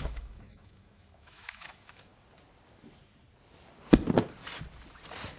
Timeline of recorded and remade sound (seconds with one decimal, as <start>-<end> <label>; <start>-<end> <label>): 0.0-2.1 remade; 2.1-5.4 recorded